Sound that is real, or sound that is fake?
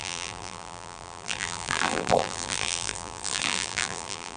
fake